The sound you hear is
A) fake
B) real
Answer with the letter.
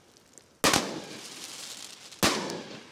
B